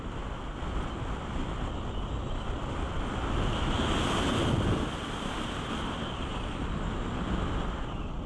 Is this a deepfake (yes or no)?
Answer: no